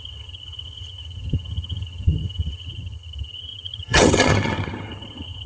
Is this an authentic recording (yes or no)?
no